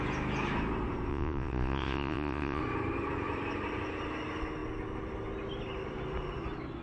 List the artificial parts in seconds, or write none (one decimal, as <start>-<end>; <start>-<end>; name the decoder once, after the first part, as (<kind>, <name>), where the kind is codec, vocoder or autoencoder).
1.1-2.6 (vocoder, Vocos)